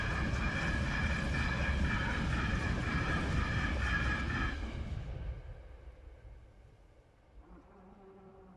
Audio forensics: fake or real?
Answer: real